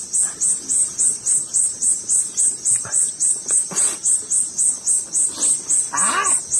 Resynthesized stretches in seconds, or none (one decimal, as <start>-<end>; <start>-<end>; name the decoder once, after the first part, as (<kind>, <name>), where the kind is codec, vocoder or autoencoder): 0.8-4.3 (vocoder, BigVGAN v2)